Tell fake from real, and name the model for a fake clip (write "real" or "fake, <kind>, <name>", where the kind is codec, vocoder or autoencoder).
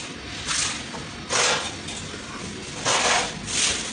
real